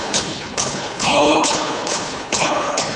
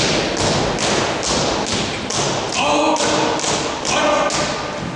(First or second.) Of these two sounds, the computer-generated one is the first